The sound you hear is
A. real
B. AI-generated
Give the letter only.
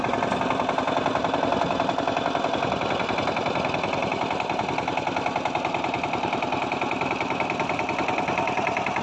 A